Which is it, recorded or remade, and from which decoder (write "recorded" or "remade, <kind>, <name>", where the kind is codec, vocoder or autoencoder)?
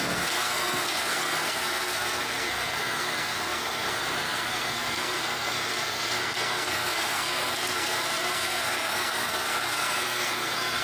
remade, codec, SNAC